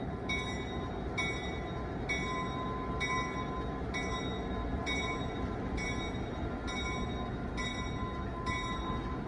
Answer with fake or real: real